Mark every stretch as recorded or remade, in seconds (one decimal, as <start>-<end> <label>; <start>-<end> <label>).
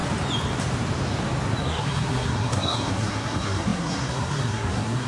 0.0-1.6 recorded; 1.6-5.1 remade